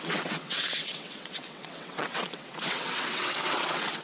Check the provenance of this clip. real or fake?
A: fake